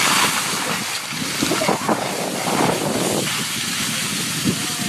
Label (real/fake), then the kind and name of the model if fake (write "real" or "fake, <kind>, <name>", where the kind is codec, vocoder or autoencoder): real